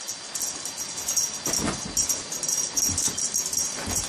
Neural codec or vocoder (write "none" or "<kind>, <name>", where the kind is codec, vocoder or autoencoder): none